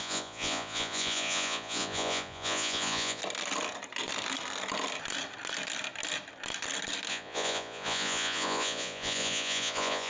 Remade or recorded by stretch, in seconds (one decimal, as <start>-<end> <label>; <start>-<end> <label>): 0.0-3.2 remade; 3.2-7.1 recorded; 7.1-10.1 remade